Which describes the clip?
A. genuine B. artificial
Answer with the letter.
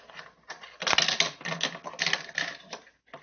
A